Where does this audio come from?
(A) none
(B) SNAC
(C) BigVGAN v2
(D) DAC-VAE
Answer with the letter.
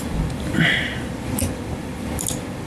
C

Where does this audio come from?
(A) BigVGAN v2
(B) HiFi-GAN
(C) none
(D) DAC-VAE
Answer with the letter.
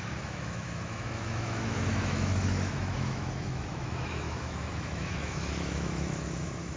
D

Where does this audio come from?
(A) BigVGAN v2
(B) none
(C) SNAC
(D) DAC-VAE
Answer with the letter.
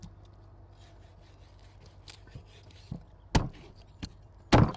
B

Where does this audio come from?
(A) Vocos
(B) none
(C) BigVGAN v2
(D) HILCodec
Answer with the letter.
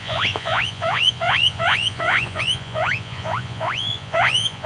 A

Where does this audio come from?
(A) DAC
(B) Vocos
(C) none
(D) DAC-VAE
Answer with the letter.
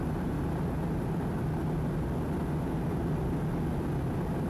C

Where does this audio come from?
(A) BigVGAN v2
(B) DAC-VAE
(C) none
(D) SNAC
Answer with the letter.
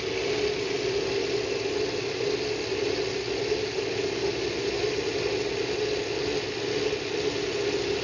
C